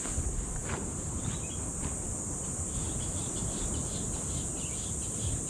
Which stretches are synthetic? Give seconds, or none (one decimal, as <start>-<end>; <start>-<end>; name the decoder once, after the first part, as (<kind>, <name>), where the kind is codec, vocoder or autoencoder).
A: none